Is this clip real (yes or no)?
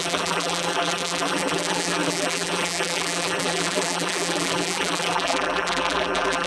no